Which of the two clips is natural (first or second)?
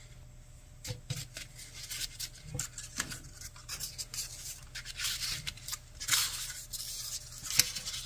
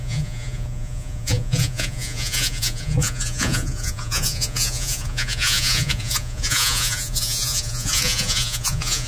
first